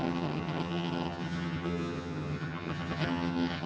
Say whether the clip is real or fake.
fake